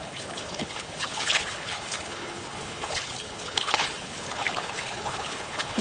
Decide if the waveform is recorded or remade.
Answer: remade